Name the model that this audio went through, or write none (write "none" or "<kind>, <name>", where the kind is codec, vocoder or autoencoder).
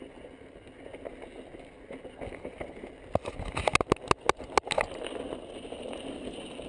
none